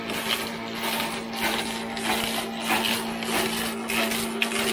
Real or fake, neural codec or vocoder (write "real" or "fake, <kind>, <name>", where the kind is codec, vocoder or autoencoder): real